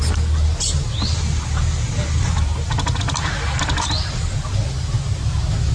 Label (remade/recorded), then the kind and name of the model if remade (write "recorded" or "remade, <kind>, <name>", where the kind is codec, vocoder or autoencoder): remade, vocoder, BigVGAN v2